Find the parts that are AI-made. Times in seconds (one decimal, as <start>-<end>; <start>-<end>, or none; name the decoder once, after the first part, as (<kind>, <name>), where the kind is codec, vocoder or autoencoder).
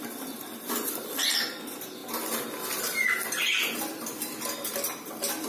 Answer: none